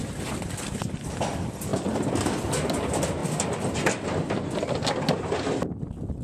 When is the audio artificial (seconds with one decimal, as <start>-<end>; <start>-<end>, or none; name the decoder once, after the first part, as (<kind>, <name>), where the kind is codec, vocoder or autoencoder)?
none